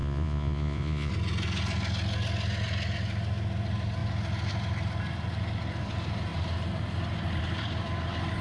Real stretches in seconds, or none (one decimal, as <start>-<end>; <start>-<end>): 1.1-8.4